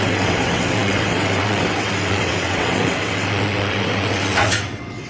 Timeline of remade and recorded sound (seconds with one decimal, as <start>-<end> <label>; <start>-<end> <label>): 0.0-5.1 remade